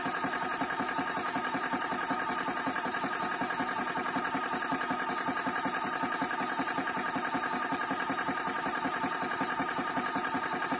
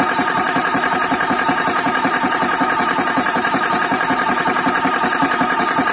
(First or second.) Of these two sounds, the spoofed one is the second